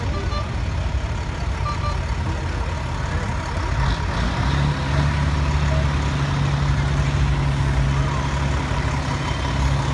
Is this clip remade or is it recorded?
recorded